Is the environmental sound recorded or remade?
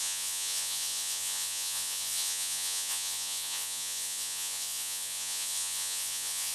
remade